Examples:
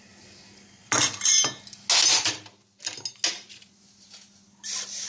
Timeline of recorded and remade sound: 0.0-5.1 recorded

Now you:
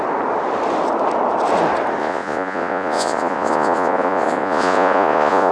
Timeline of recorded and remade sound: 0.0-2.0 recorded; 2.0-5.5 remade

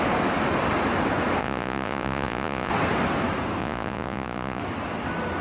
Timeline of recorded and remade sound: 0.0-1.4 recorded; 1.4-2.7 remade; 2.7-3.6 recorded; 3.6-4.6 remade; 4.6-5.4 recorded

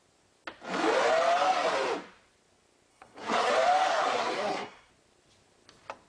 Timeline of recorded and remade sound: 0.0-2.9 recorded; 2.9-3.5 remade; 3.5-3.9 recorded; 3.9-4.9 remade; 4.9-6.1 recorded

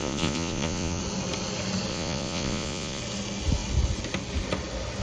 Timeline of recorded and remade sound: 0.0-1.0 remade; 1.0-1.9 recorded; 1.9-3.0 remade; 3.0-5.0 recorded

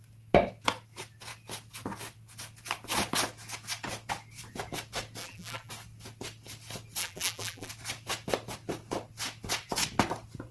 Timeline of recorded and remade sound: 0.0-5.2 recorded; 5.2-5.7 remade; 5.7-7.0 recorded; 7.0-7.7 remade; 7.7-10.5 recorded